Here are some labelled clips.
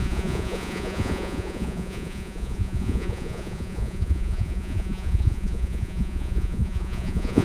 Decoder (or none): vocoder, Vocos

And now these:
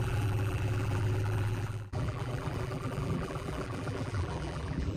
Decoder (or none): vocoder, BigVGAN v2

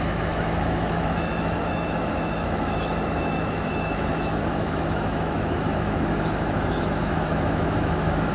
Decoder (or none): autoencoder, DAC-VAE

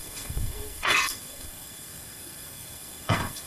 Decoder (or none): codec, SNAC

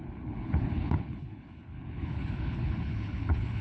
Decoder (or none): codec, HILCodec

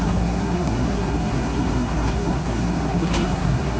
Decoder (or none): codec, SNAC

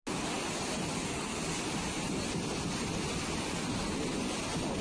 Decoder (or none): none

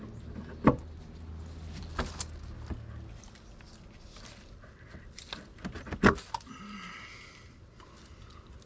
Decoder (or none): none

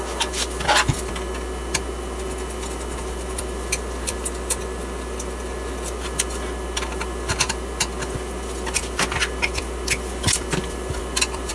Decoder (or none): none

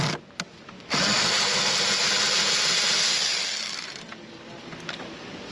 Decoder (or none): none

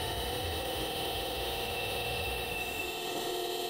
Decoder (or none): autoencoder, DAC-VAE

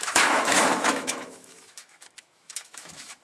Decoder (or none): autoencoder, DAC-VAE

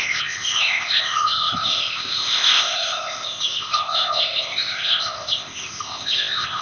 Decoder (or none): codec, ZipCodec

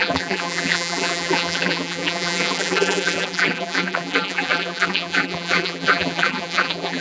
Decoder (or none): vocoder, BigVGAN v2